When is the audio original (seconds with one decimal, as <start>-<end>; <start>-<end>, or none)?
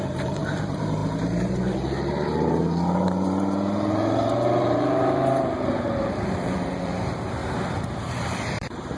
7.4-8.0